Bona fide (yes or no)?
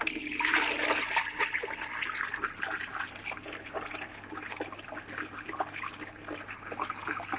yes